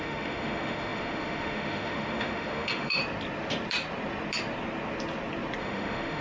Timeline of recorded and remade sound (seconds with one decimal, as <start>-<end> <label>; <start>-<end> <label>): 0.0-3.0 remade; 3.0-5.6 recorded; 5.6-6.2 remade